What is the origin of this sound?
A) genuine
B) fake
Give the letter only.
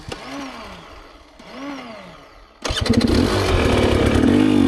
A